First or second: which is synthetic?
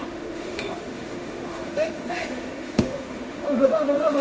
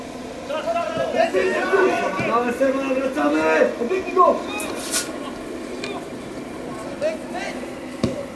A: first